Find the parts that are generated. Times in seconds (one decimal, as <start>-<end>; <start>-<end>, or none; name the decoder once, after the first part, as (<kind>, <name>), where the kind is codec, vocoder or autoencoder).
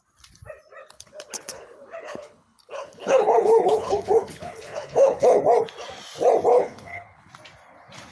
0.8-5.4 (codec, HILCodec); 6.5-7.3